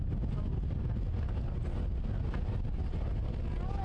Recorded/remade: recorded